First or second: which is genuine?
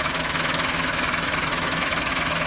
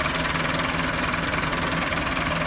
second